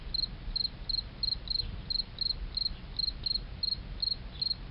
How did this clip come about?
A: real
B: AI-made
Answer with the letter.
A